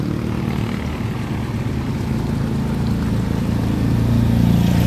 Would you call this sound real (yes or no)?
yes